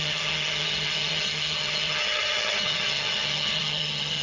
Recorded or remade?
remade